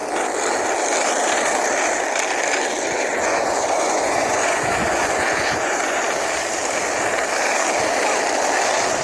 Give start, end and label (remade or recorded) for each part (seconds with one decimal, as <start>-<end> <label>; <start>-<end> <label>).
0.0-3.1 recorded; 3.1-6.0 remade; 6.0-9.0 recorded